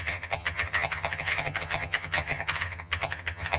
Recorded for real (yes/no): no